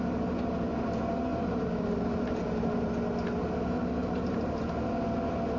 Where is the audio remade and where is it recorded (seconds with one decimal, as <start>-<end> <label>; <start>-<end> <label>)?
0.0-1.3 recorded; 1.3-2.9 remade; 2.9-4.0 recorded; 4.0-4.7 remade; 4.7-5.6 recorded